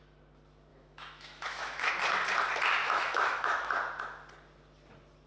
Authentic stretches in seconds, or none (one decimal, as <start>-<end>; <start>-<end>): 0.0-0.7; 1.9-2.8; 3.7-5.3